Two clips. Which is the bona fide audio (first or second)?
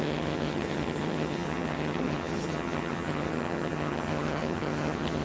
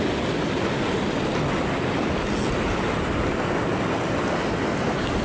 second